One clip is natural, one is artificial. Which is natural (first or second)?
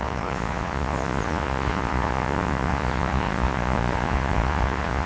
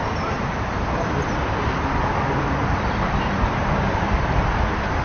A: second